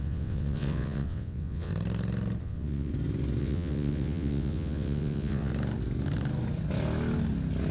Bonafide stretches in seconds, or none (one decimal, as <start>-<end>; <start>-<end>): 1.7-2.4; 2.9-3.4; 5.5-7.7